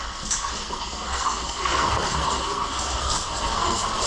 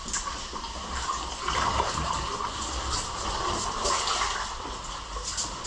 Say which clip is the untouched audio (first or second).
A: second